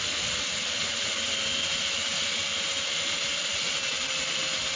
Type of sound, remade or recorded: recorded